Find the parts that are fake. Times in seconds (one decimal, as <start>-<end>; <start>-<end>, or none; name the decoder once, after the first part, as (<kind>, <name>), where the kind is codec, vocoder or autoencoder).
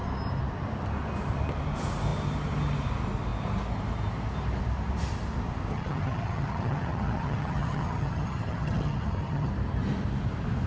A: 5.7-9.5 (vocoder, HiFi-GAN)